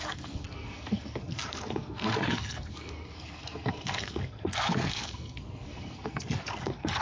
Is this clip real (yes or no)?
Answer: no